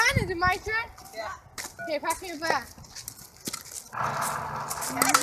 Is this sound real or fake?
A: real